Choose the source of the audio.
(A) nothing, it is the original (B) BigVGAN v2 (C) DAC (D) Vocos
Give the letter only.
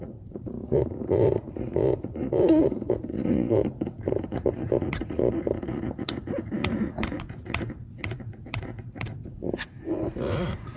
D